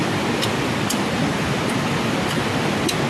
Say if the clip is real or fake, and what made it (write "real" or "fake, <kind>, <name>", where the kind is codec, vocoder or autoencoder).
real